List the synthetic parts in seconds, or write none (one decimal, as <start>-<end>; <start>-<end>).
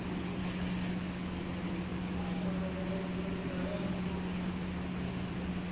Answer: 0.4-1.4